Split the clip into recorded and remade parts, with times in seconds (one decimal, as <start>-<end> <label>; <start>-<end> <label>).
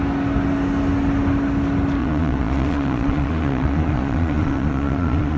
0.0-2.0 recorded; 2.0-5.4 remade